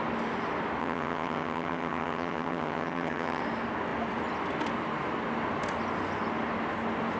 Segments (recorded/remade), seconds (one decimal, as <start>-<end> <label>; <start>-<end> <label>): 0.0-0.8 recorded; 0.8-3.4 remade; 3.4-7.2 recorded